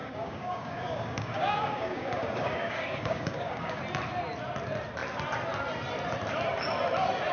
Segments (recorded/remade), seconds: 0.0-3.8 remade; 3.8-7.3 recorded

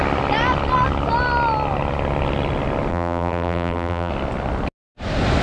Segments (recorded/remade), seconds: 0.0-2.9 recorded; 2.9-4.1 remade; 4.1-5.4 recorded

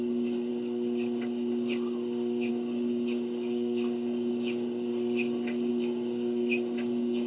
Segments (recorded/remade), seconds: 0.0-0.5 remade; 0.5-2.5 recorded; 2.5-4.9 remade; 4.9-5.7 recorded; 5.7-7.3 remade

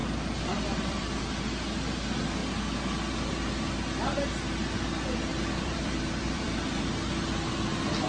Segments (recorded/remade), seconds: 0.0-1.2 remade; 1.2-5.3 recorded; 5.3-6.8 remade; 6.8-8.1 recorded

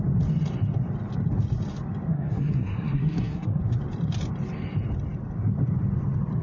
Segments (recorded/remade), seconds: 0.0-2.1 recorded; 2.1-3.6 remade; 3.6-6.4 recorded